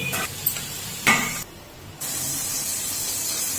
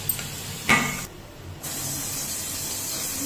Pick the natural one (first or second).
second